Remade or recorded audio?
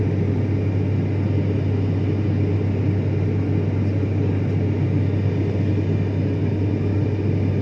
recorded